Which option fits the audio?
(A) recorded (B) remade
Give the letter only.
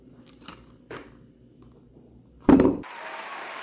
B